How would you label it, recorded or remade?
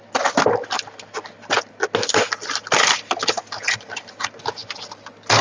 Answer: recorded